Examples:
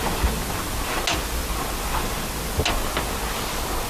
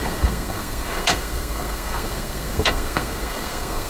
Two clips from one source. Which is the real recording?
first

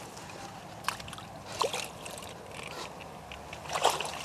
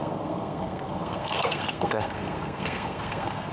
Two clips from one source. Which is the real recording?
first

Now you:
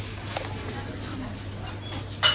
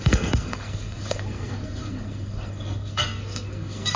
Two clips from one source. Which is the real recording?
first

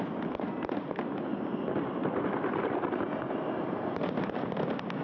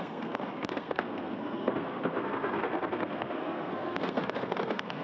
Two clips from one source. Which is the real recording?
first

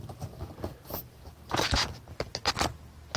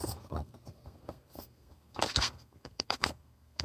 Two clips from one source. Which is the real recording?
first